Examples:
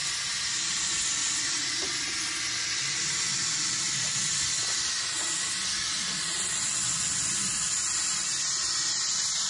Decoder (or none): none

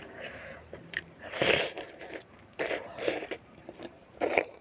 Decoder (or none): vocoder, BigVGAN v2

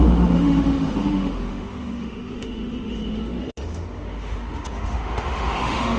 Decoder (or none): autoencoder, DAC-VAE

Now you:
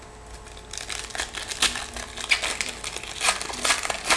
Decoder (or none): none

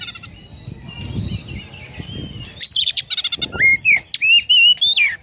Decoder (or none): none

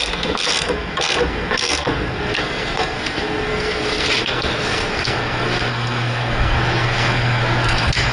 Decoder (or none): codec, SNAC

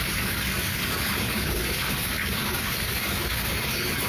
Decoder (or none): codec, DAC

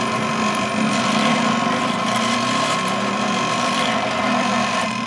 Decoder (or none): vocoder, BigVGAN v2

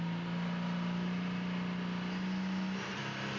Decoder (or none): none